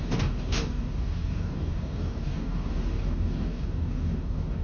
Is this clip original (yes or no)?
no